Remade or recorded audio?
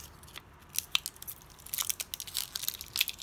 recorded